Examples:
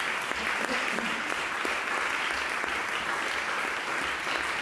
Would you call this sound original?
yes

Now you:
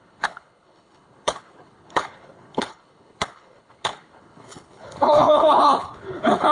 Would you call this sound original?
no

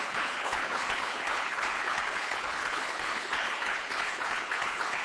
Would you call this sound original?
no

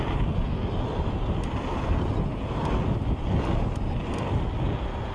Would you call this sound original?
yes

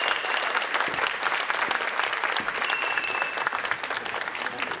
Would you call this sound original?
yes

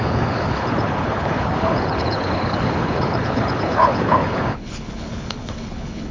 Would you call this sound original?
no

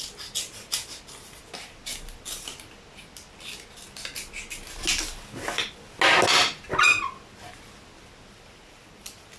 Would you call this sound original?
yes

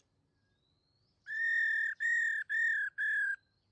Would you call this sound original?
yes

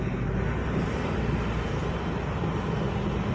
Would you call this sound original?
yes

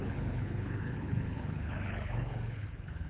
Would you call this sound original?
no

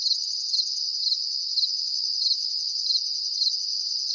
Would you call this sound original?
yes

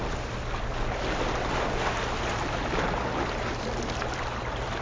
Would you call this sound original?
yes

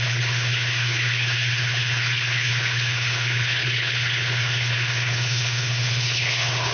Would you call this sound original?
no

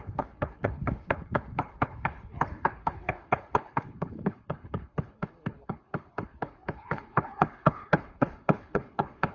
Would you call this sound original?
no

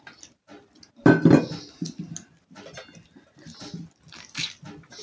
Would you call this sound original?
yes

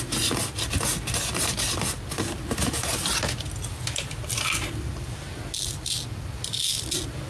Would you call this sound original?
yes